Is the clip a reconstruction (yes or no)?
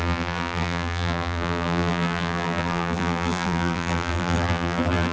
yes